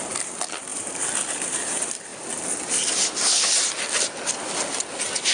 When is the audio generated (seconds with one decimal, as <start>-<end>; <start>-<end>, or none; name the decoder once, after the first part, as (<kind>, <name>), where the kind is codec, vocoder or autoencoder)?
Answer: none